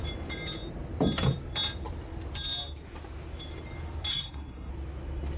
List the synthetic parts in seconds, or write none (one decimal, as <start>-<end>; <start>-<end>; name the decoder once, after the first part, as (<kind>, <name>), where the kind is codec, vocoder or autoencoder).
4.1-4.7 (codec, SNAC)